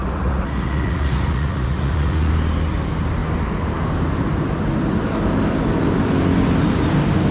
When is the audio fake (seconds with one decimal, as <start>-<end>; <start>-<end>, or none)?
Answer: 0.0-2.3